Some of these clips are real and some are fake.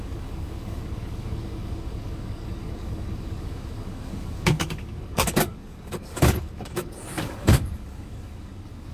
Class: fake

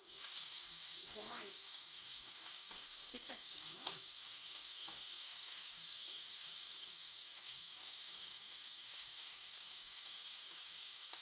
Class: fake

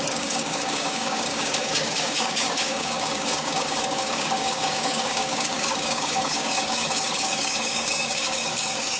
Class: fake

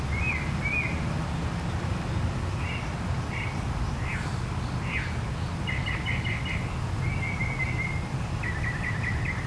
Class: real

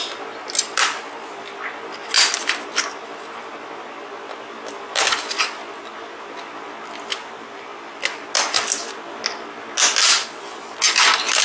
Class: real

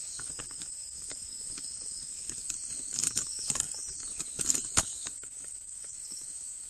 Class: fake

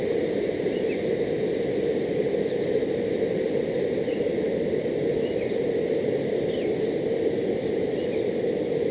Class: real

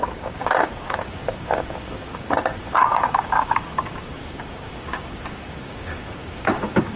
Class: fake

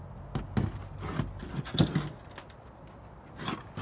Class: real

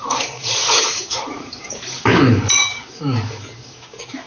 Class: fake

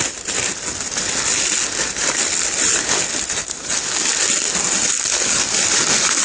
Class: real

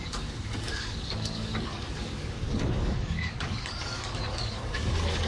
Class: fake